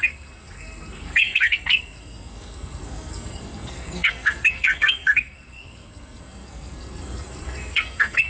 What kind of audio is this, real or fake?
fake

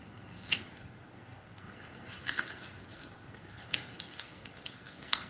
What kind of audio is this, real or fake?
fake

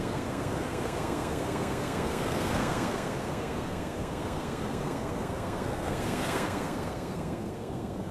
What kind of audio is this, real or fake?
fake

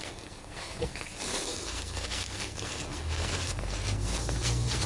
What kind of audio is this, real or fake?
fake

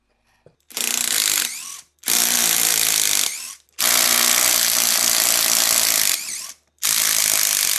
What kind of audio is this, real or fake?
real